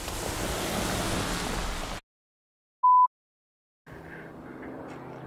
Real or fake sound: real